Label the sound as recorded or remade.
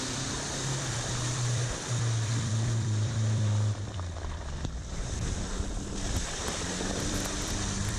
remade